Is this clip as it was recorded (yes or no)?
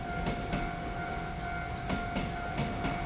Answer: yes